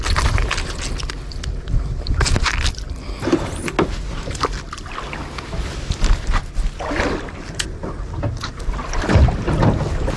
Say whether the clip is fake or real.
real